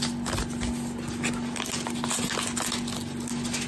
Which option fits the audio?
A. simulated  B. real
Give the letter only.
B